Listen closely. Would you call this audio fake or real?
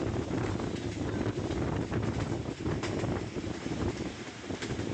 real